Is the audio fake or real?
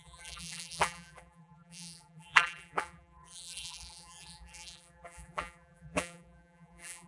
fake